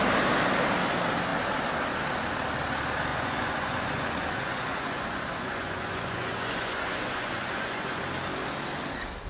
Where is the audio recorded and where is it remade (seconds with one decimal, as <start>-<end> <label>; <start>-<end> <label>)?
0.0-3.1 recorded; 3.1-8.0 remade; 8.0-9.3 recorded